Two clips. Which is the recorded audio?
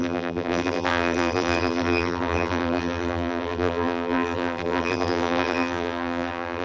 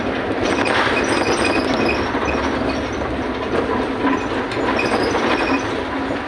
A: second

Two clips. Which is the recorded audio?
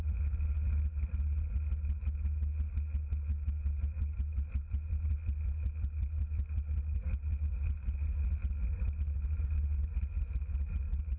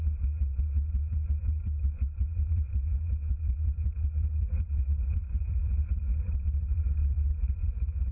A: first